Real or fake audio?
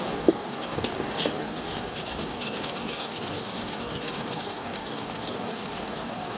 fake